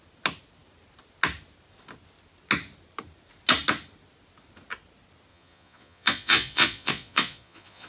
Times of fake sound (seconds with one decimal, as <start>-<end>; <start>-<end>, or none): 5.3-7.9